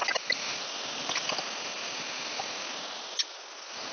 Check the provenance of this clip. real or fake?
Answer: real